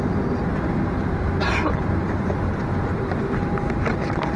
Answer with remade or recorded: recorded